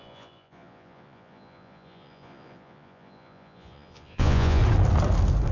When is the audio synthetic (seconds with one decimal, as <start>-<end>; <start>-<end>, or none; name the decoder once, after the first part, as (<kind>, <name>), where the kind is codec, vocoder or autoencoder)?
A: 0.0-4.6 (vocoder, Vocos)